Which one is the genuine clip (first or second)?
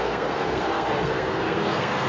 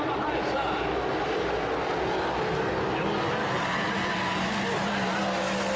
second